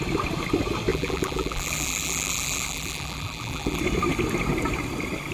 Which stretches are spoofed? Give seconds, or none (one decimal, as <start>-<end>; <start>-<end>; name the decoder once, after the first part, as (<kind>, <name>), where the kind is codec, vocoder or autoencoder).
0.9-3.8 (vocoder, BigVGAN v2)

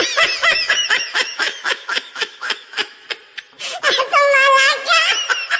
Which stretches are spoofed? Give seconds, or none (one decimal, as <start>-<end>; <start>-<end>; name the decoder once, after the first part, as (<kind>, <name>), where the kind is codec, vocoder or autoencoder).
0.4-3.0 (autoencoder, DAC-VAE)

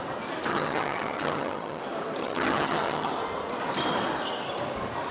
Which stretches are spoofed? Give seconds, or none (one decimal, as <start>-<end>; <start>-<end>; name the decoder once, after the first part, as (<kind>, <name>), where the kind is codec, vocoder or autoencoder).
0.5-1.8 (vocoder, HiFi-GAN); 2.2-3.1

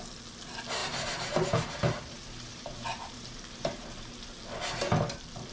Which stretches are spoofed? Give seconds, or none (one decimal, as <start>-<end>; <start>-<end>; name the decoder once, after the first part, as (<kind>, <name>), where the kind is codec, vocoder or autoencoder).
0.8-4.1 (vocoder, BigVGAN v2)

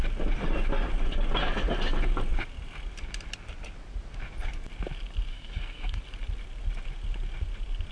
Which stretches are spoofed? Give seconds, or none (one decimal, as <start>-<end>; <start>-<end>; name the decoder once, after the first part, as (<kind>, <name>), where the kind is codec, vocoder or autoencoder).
5.3-6.0 (codec, SNAC)